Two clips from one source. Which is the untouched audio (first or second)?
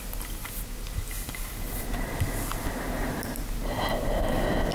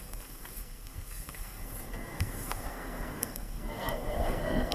first